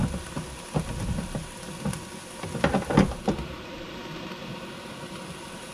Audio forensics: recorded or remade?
recorded